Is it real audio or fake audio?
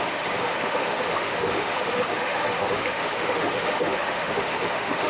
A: fake